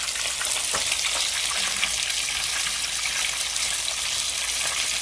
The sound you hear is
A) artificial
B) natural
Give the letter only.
B